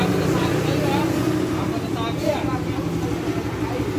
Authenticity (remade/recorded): recorded